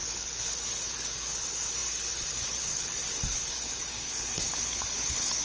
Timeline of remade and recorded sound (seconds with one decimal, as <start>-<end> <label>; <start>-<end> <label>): 0.0-5.4 remade